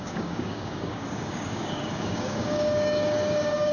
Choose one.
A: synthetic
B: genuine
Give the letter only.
A